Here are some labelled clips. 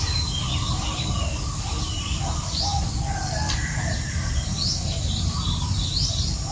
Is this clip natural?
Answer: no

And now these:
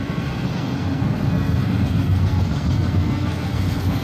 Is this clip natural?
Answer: no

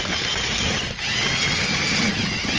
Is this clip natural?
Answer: yes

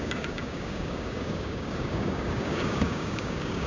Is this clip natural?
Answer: no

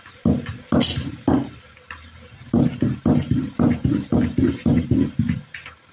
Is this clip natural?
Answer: yes